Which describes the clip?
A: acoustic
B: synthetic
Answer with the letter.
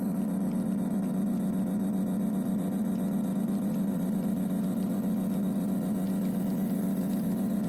B